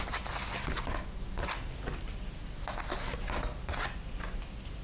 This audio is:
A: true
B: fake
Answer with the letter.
A